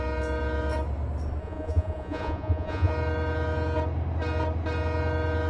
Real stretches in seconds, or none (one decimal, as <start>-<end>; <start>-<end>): 0.0-1.4; 2.9-5.5